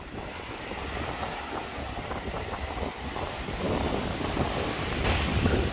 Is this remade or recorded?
recorded